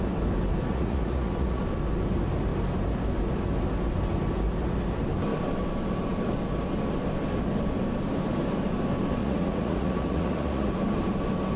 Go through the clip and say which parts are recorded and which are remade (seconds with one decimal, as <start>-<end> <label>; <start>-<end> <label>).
0.0-0.7 recorded; 0.7-1.6 remade; 1.6-9.2 recorded; 9.2-10.7 remade; 10.7-11.6 recorded